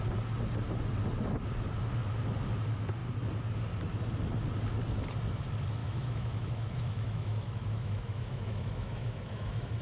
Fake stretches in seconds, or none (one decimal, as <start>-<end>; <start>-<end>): 5.8-9.8